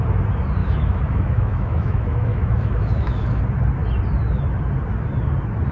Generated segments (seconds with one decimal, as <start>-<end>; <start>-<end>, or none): 0.6-3.4